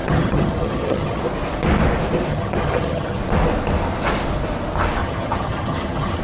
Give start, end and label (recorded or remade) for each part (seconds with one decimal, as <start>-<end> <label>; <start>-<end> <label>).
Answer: 0.0-1.2 remade; 1.2-2.3 recorded; 2.3-3.2 remade; 3.2-5.0 recorded; 5.0-6.2 remade